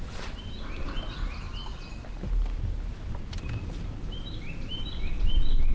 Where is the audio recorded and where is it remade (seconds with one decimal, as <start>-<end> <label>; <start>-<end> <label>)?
0.0-5.7 recorded